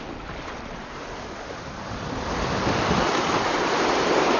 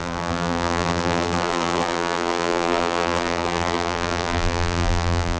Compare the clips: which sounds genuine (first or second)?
first